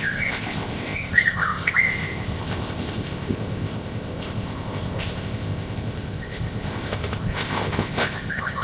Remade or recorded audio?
remade